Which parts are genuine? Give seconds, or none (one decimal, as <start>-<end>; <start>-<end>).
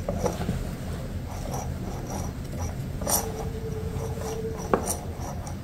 0.0-2.8; 4.2-5.6